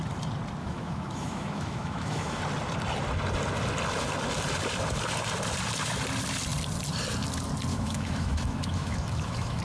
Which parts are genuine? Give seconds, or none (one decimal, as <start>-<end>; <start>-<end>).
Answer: 0.0-0.6; 2.4-7.7